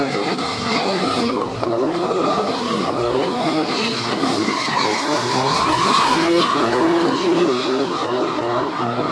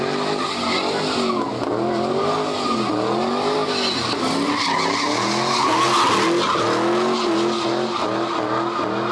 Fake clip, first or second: first